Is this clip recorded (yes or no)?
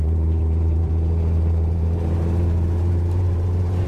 no